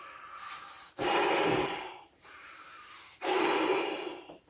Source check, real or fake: fake